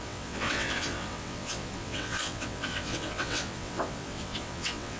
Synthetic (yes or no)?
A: yes